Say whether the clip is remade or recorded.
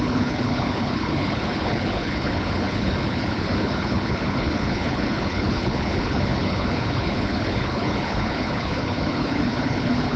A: remade